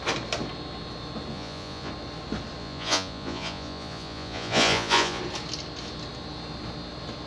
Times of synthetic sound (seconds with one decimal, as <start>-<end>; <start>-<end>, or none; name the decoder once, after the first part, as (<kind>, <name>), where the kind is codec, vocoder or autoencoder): 1.3-1.9 (vocoder, Vocos); 2.6-5.2